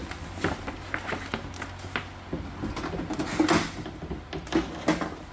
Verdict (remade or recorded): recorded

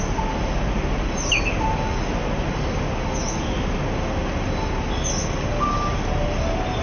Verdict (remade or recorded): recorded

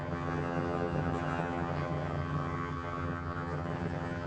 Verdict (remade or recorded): remade